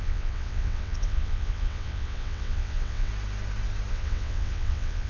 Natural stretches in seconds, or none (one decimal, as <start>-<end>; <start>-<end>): 3.1-3.9